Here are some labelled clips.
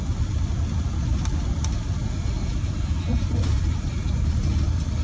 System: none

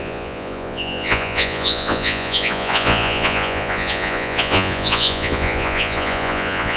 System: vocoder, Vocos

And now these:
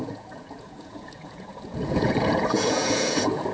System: vocoder, Vocos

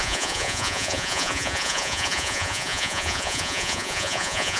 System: vocoder, Vocos